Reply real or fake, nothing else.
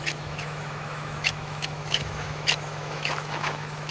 fake